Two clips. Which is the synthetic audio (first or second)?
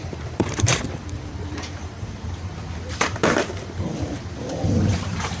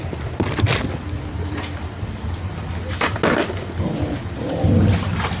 first